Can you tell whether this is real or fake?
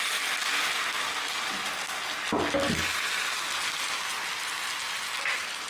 real